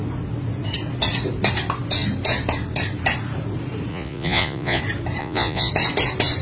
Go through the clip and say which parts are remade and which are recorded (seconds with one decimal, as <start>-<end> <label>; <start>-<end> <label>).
0.0-3.9 recorded; 3.9-4.8 remade; 4.8-5.2 recorded; 5.2-5.7 remade; 5.7-6.4 recorded